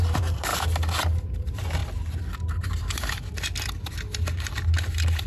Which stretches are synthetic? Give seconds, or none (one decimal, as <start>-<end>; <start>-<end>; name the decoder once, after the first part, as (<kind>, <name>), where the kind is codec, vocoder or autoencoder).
0.0-0.5 (vocoder, BigVGAN v2); 1.2-1.8